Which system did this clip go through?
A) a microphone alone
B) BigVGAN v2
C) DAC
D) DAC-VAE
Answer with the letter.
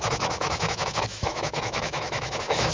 D